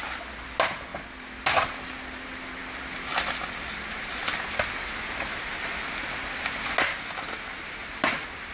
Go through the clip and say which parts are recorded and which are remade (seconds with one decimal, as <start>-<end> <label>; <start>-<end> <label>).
0.0-8.5 recorded